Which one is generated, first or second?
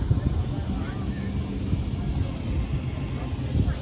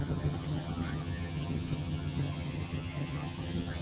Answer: second